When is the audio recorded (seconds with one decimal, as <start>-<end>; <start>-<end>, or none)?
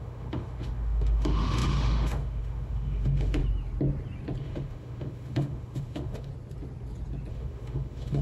3.4-4.4; 6.3-7.3